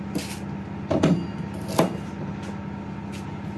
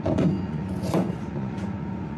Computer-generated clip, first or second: second